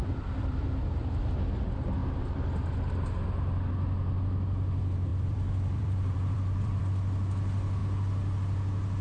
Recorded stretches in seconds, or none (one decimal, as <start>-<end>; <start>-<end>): 1.3-5.1; 6.8-9.0